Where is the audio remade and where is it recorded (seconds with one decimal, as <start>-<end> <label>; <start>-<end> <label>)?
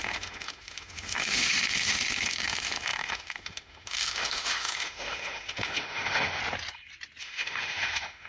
0.0-6.4 remade; 6.4-7.2 recorded; 7.2-8.3 remade